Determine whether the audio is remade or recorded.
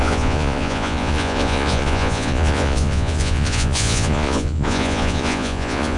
remade